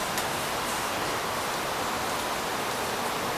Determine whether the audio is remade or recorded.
recorded